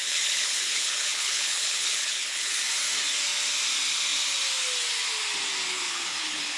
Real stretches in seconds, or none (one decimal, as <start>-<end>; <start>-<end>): 2.6-5.7

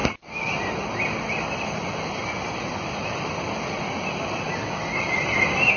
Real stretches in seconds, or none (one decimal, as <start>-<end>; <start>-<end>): 0.0-5.8

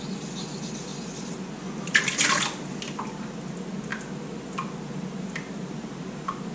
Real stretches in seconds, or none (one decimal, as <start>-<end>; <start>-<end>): 0.0-6.5

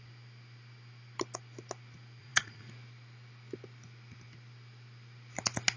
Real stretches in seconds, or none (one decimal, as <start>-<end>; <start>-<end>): 0.0-2.2; 2.7-5.8

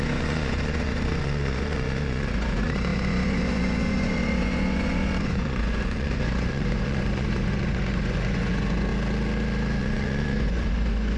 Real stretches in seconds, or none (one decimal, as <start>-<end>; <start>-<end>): 8.9-9.8

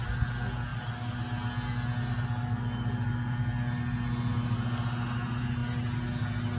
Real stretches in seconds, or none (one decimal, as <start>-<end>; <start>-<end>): 0.0-6.6

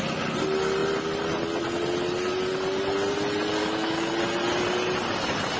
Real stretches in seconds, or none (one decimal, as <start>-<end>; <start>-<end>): 0.0-3.6; 4.1-5.6

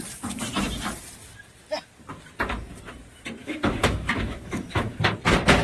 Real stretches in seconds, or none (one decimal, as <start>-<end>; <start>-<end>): 0.0-3.4; 5.0-5.6